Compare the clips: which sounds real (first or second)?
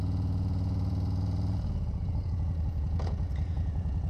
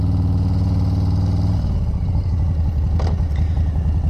second